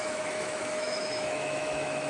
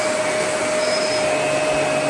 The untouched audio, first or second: second